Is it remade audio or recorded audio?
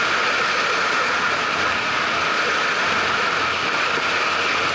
recorded